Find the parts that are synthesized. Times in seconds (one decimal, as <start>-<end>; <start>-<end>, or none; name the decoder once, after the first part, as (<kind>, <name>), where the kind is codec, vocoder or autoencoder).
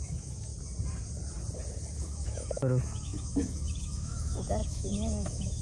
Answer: 0.0-0.5 (autoencoder, DAC-VAE); 2.0-5.6